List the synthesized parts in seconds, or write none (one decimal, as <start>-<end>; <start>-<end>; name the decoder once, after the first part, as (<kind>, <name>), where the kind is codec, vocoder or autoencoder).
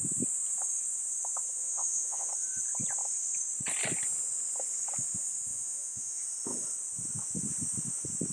1.6-2.3 (vocoder, Vocos); 5.5-6.2